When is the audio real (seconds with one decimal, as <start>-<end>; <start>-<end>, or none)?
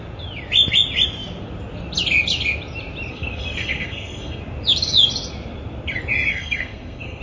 0.0-3.1; 4.4-6.3